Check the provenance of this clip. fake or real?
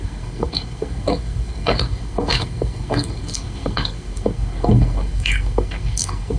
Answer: fake